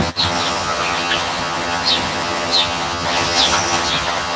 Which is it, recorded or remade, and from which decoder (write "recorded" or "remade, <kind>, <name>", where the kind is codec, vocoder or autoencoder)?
remade, vocoder, HiFi-GAN